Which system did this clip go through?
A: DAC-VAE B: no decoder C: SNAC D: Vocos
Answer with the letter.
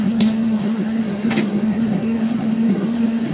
C